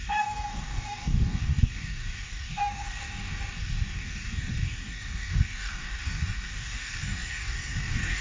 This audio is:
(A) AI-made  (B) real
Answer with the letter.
A